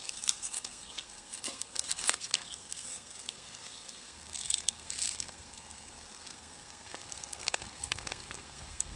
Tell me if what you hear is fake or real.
fake